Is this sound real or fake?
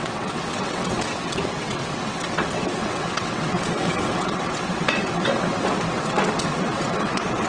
fake